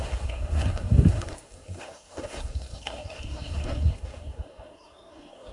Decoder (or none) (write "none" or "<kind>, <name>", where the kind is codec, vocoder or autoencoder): codec, SNAC